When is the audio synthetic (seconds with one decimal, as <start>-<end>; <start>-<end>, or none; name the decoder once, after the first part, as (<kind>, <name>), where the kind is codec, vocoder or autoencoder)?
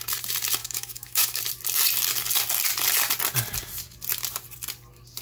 0.6-1.4 (autoencoder, DAC-VAE)